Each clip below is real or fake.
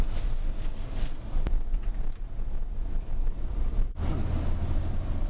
real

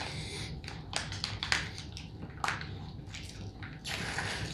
real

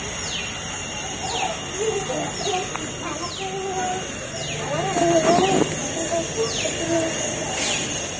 real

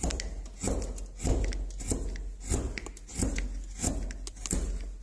real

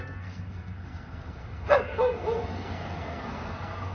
fake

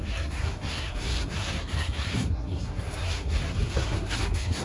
fake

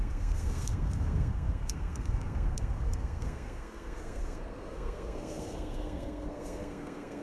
fake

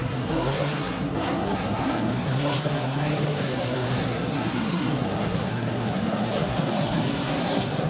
fake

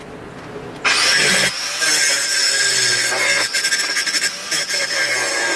real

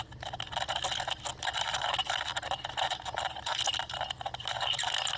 real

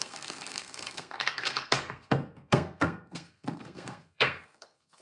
fake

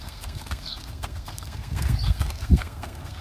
fake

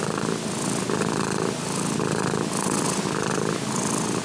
real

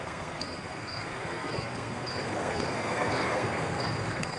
fake